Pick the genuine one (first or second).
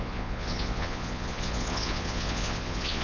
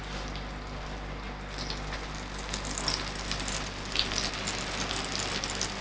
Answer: second